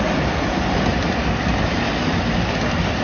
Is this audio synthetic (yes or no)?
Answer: no